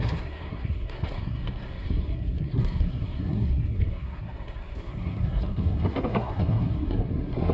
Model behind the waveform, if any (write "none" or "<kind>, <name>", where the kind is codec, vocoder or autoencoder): codec, SNAC